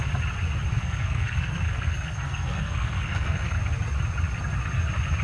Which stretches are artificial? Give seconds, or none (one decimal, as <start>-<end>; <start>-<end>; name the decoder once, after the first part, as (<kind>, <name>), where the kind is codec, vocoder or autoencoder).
0.7-3.6 (codec, SNAC)